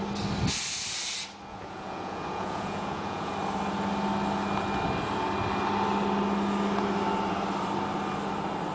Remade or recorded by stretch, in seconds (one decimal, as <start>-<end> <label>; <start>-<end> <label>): 0.0-1.5 recorded; 1.5-3.3 remade; 3.3-8.7 recorded